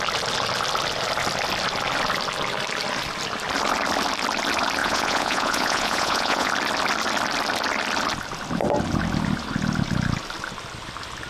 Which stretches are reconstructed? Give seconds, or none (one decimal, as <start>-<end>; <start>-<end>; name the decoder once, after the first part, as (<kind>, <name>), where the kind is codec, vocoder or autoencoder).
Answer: 4.8-6.5 (vocoder, Vocos)